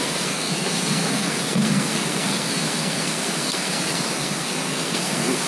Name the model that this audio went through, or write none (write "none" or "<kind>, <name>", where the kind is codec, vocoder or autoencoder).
codec, SNAC